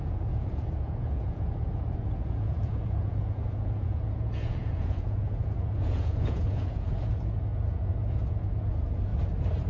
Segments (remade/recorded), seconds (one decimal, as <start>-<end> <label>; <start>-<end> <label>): 0.0-9.1 remade; 9.1-9.7 recorded